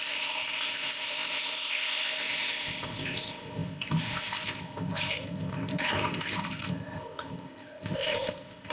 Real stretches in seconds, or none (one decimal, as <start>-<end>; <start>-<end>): none